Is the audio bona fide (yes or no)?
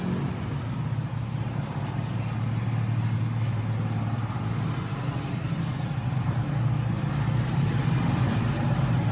yes